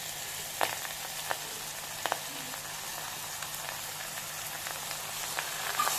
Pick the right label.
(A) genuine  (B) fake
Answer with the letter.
A